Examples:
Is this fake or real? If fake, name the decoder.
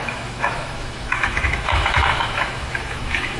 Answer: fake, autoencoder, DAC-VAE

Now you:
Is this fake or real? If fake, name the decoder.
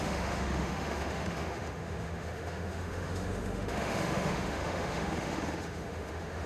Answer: fake, autoencoder, DAC-VAE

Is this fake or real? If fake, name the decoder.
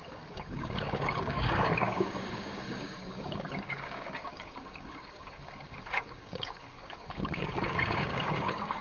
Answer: fake, codec, DAC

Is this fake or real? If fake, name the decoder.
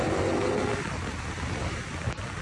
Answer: real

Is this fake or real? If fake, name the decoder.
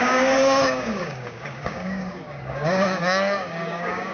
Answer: fake, codec, DAC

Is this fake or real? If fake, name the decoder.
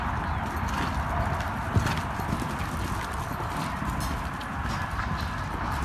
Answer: real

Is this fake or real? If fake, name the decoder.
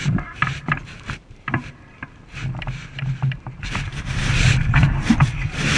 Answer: fake, vocoder, BigVGAN v2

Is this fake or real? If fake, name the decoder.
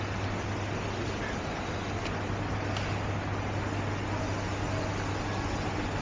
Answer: real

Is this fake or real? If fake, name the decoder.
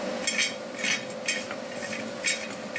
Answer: real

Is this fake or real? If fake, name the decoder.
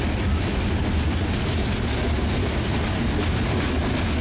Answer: real